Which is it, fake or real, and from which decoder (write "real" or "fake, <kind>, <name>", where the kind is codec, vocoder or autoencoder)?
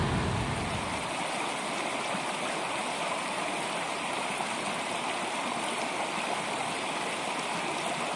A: real